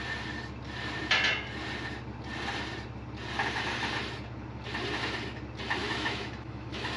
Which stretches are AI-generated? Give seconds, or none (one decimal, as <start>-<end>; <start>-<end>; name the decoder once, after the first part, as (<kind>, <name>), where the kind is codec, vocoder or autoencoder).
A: 5.8-7.0 (autoencoder, DAC-VAE)